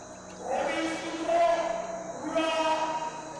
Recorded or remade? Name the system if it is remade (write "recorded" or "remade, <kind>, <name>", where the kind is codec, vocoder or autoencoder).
recorded